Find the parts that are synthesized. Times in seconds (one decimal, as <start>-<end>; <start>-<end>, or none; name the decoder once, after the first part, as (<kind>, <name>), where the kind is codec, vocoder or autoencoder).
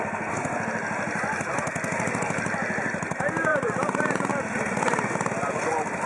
3.5-4.3 (vocoder, BigVGAN v2)